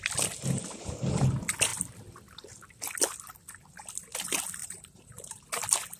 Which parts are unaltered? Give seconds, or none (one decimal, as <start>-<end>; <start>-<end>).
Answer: 0.0-4.6; 5.5-6.0